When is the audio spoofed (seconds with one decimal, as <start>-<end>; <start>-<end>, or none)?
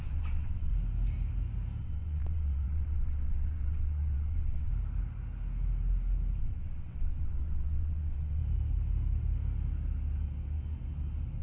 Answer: 0.0-0.7; 1.8-4.7; 6.4-8.4